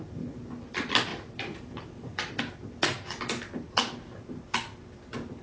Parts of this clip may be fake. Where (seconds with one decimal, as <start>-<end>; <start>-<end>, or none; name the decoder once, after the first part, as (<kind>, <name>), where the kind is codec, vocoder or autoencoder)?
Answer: 1.1-2.4 (vocoder, BigVGAN v2)